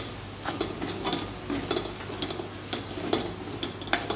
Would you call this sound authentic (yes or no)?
yes